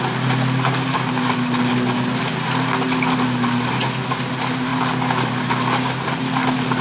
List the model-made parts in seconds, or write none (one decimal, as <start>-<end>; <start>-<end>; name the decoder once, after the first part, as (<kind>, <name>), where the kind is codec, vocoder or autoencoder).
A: 4.7-5.5 (vocoder, BigVGAN v2)